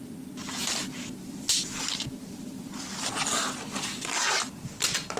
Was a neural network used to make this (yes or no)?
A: no